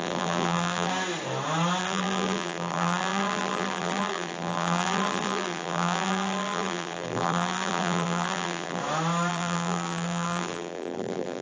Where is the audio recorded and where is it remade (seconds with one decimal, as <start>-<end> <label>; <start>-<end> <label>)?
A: 0.0-0.9 remade; 0.9-1.8 recorded; 1.8-8.8 remade; 8.8-9.3 recorded; 9.3-11.4 remade